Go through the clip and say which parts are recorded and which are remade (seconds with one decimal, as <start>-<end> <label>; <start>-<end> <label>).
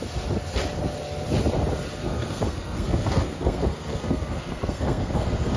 0.0-2.0 recorded; 2.0-5.6 remade